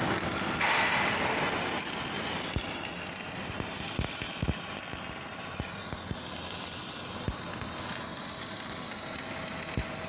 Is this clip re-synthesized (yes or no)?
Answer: no